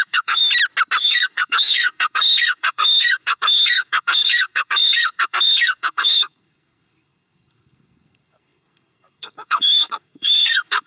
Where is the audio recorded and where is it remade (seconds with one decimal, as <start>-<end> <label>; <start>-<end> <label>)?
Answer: 0.0-0.4 remade; 0.4-1.0 recorded; 1.0-10.9 remade